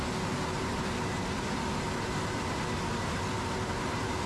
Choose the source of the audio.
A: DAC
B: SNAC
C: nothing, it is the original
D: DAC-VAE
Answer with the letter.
C